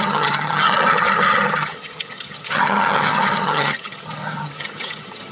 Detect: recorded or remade remade